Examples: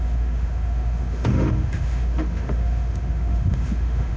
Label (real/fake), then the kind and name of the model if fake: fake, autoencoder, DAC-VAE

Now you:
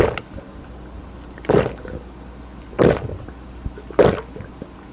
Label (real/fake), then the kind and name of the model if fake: real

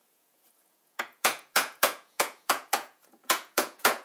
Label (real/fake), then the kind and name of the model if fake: fake, vocoder, Vocos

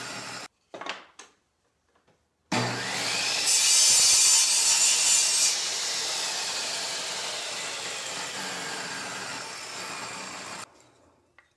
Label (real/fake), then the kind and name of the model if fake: real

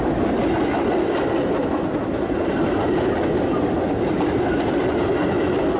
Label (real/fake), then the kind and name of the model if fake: real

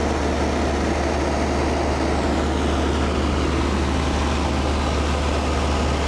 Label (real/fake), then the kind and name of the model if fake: real